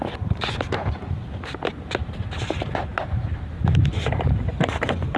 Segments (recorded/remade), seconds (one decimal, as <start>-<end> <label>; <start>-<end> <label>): 0.0-1.2 remade; 1.2-2.4 recorded; 2.4-2.9 remade; 2.9-3.9 recorded; 3.9-5.2 remade